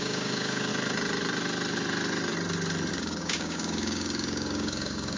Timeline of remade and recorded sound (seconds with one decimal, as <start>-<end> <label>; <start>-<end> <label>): 0.0-0.7 remade; 0.7-2.9 recorded; 2.9-5.2 remade